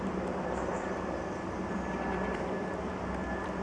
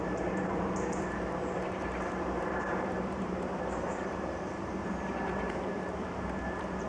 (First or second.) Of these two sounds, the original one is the first